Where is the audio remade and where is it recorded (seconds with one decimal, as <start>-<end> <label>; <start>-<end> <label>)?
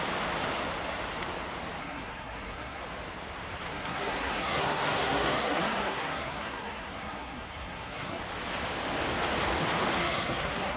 0.0-1.8 recorded; 1.8-2.8 remade; 2.8-3.7 recorded; 3.7-8.2 remade; 8.2-10.0 recorded; 10.0-10.8 remade